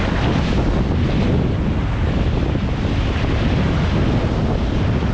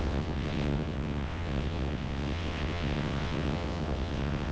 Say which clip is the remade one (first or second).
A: second